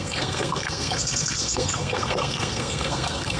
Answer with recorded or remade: remade